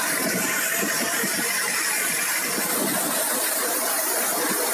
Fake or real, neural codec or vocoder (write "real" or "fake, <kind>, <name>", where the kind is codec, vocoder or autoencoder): fake, vocoder, BigVGAN v2